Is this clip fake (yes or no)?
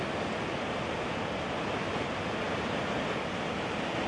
no